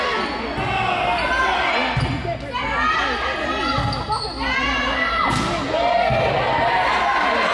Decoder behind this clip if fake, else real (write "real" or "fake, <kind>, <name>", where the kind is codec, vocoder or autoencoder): real